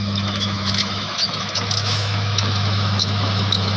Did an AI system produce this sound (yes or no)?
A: yes